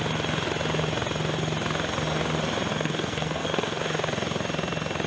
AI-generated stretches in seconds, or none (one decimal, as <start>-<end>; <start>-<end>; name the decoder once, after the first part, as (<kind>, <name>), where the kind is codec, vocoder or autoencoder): 2.7-3.8 (codec, SNAC)

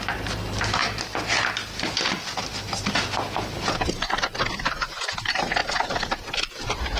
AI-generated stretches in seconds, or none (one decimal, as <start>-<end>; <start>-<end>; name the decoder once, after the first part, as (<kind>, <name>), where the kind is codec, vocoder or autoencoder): none

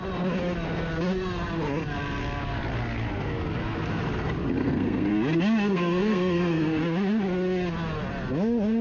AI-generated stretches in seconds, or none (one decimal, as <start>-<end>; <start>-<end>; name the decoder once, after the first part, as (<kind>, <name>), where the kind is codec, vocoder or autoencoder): 4.6-5.1 (codec, SNAC); 5.7-6.8

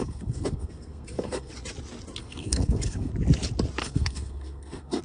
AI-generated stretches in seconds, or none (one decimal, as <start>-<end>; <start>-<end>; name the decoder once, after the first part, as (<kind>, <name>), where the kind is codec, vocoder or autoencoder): 0.0-1.5 (codec, SNAC); 2.2-3.1; 3.8-5.0